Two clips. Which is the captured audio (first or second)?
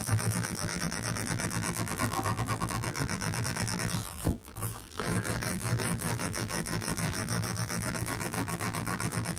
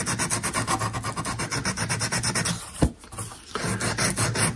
second